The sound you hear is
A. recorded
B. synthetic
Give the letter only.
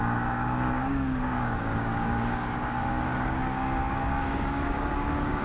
B